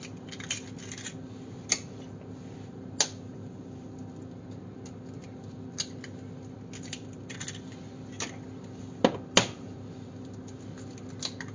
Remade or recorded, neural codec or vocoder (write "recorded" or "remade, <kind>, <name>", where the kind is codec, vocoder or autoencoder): recorded